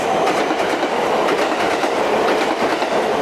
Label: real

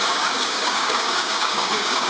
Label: fake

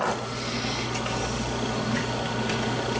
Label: real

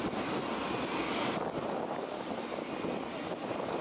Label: real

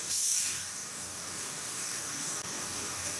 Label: fake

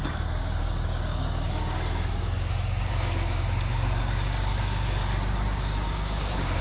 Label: fake